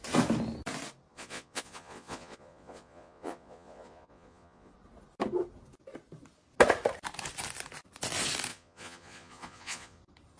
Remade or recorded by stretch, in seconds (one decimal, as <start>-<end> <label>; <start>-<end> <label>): 0.0-1.1 recorded; 1.1-4.7 remade; 4.7-8.5 recorded; 8.5-10.0 remade; 10.0-10.4 recorded